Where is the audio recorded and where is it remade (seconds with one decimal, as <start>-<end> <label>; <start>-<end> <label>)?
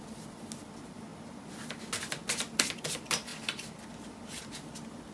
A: 0.0-5.1 recorded